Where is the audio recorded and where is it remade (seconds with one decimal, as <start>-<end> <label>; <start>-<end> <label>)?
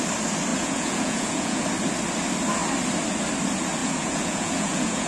0.0-0.5 recorded; 0.5-1.6 remade; 1.6-3.8 recorded; 3.8-5.1 remade